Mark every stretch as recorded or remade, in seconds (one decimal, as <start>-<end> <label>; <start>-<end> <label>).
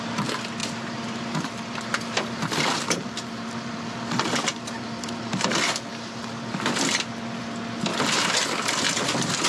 0.0-0.6 recorded; 0.6-5.3 remade; 5.3-9.5 recorded